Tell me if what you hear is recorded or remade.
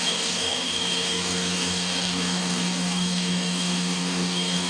remade